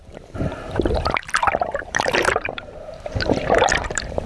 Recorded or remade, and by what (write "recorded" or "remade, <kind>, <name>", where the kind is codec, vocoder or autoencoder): remade, vocoder, BigVGAN v2